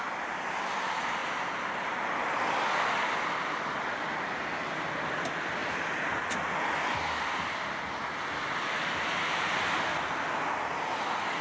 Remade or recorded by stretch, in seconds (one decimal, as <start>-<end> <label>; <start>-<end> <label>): 0.0-11.4 recorded